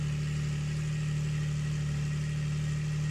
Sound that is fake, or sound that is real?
real